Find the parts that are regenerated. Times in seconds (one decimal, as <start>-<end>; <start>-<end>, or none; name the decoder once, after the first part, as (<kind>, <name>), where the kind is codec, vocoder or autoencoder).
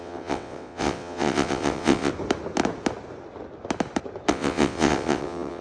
0.0-2.1 (vocoder, WaveNeXt); 4.3-5.6